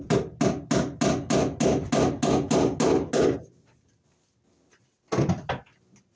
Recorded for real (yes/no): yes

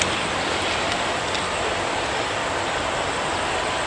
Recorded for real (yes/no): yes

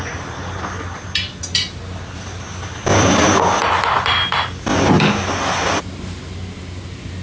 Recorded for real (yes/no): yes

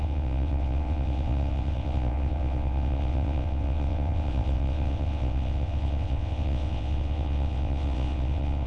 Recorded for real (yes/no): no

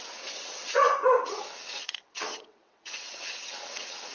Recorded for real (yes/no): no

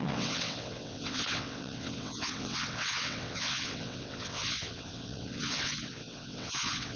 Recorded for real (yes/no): no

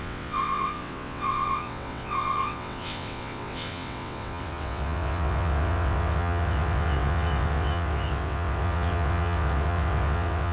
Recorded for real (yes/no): no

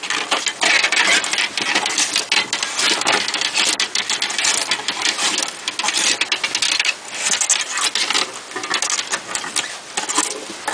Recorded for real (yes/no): yes